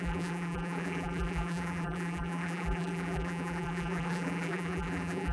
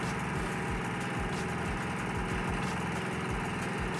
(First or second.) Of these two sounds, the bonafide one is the second